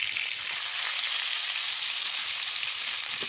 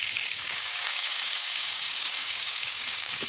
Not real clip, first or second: second